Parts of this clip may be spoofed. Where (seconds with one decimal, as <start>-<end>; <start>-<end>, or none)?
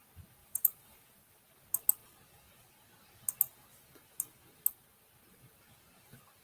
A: 0.4-1.2